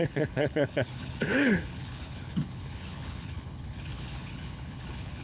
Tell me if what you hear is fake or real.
fake